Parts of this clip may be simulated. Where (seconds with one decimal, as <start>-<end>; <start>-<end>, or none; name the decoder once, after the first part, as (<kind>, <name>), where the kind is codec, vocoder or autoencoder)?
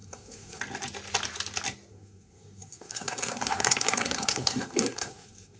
0.0-0.6 (codec, SNAC); 1.9-5.6